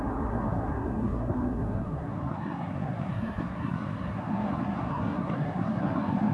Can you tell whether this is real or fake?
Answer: fake